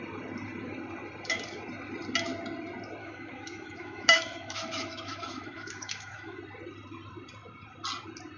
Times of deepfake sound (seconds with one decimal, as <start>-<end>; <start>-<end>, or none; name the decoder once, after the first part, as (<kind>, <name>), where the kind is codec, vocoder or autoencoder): 3.0-6.4 (autoencoder, DAC-VAE)